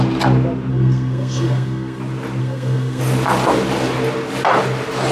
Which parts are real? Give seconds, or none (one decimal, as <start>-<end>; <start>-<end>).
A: 0.0-0.7; 2.0-2.4; 3.0-5.1